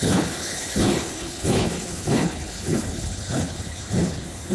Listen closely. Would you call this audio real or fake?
fake